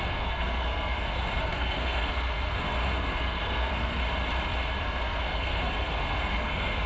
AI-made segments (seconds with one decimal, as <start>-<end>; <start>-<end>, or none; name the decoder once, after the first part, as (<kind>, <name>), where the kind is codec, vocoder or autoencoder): 0.0-4.0 (codec, SNAC); 4.8-6.9